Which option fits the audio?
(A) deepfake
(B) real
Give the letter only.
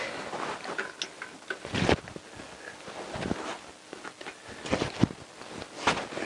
B